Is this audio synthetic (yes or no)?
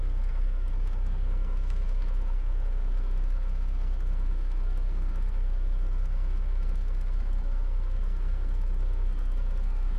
yes